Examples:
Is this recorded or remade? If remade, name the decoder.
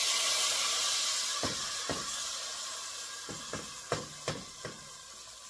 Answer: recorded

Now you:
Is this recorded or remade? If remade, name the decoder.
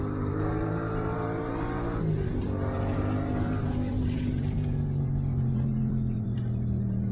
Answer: remade, vocoder, BigVGAN v2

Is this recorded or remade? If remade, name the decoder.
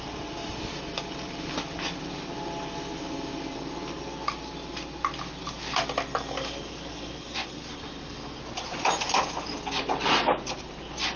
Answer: recorded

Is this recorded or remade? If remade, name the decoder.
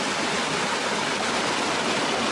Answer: recorded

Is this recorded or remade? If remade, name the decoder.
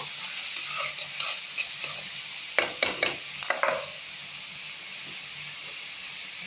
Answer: recorded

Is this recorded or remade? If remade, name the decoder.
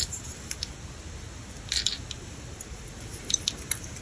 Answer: recorded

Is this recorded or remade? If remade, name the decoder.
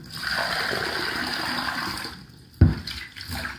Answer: recorded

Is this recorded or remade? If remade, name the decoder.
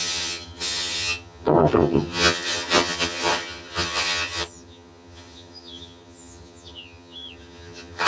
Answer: remade, vocoder, HiFi-GAN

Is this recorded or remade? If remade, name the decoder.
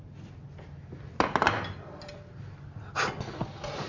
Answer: recorded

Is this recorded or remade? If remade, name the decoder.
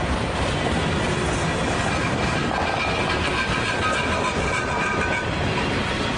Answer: recorded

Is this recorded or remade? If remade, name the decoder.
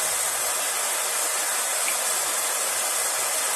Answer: recorded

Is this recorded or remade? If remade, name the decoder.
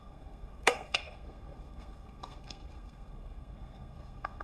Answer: remade, codec, SNAC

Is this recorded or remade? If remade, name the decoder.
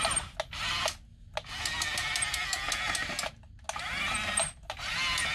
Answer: recorded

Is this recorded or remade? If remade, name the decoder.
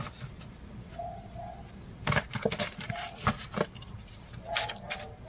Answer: recorded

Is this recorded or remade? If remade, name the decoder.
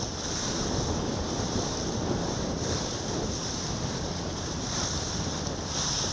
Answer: remade, vocoder, BigVGAN v2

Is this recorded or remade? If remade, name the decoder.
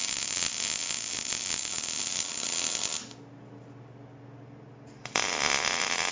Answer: recorded